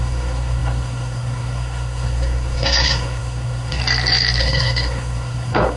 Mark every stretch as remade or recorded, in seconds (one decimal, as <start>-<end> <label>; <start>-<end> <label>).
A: 0.0-3.8 remade; 3.8-4.4 recorded; 4.4-5.8 remade